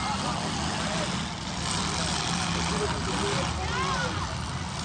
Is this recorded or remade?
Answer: recorded